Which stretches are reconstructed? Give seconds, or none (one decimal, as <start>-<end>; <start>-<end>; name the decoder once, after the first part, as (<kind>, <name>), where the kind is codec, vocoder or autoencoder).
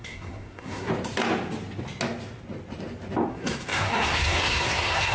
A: 0.0-0.9 (codec, SNAC); 3.3-5.1